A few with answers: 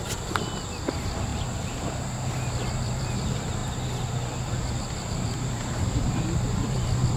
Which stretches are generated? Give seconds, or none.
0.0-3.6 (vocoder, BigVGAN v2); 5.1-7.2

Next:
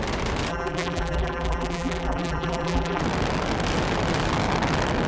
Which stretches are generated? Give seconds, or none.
0.5-3.0 (vocoder, BigVGAN v2)

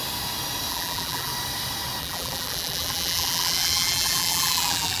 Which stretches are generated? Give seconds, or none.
0.7-1.3 (vocoder, BigVGAN v2); 2.0-5.0

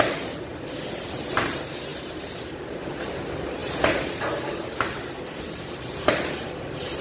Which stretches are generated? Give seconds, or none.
0.0-0.5 (vocoder, BigVGAN v2); 1.1-7.0

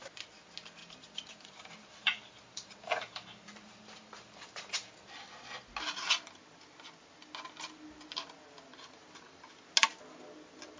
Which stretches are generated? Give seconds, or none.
0.8-4.9 (vocoder, BigVGAN v2); 8.7-9.5

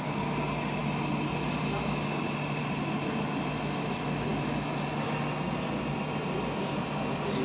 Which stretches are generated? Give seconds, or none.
none